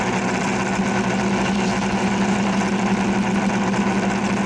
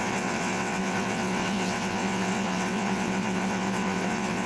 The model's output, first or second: second